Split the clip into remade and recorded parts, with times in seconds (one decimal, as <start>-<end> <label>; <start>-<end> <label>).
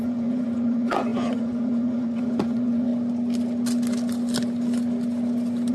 0.0-2.9 remade; 2.9-5.7 recorded